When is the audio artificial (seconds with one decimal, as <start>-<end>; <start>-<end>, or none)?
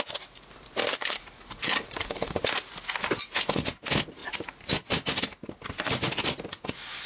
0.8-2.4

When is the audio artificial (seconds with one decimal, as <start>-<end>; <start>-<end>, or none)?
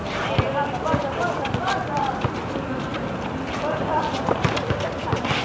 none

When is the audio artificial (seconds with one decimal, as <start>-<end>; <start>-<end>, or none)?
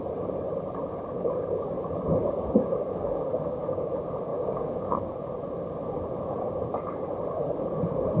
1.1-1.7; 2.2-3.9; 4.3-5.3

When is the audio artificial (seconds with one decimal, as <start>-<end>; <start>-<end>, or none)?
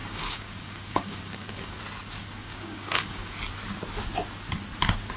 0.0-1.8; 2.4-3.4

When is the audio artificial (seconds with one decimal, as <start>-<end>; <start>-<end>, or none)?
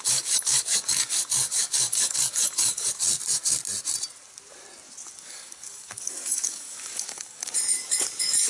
0.0-3.0; 5.2-8.5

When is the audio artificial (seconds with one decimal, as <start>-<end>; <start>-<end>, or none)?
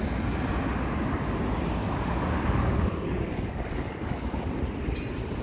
1.8-4.5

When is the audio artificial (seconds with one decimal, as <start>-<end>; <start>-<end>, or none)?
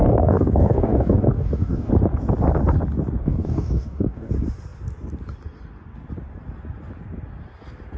0.0-1.9; 3.2-4.3